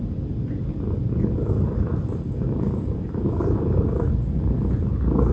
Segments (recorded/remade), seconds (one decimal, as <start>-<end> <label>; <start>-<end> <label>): 0.0-2.0 recorded; 2.0-5.3 remade